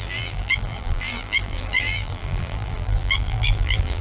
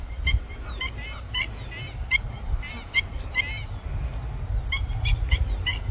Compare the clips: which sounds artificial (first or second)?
first